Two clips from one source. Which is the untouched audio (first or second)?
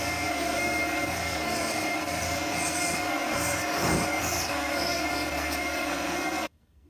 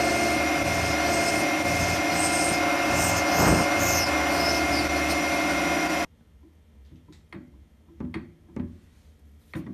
second